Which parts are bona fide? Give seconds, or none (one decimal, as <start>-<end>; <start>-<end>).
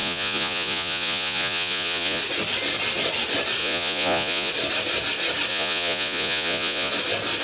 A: 2.2-3.6; 4.5-5.5; 6.9-7.4